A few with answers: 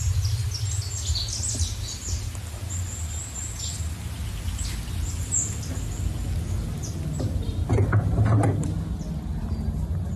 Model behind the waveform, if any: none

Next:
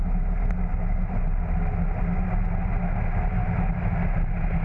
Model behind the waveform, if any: none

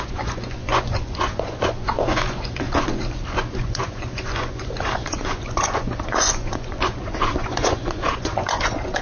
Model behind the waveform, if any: vocoder, Vocos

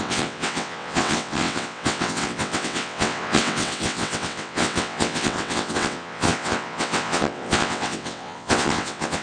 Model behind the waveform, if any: vocoder, WaveNeXt